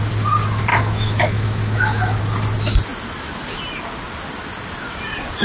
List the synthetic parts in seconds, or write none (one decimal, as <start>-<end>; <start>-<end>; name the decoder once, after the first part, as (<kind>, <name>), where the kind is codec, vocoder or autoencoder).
0.7-2.2 (autoencoder, DAC-VAE)